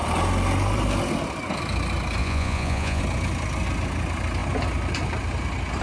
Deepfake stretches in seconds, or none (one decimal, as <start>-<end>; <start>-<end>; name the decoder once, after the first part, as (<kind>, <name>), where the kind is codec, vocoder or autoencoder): 2.2-3.0 (vocoder, Vocos)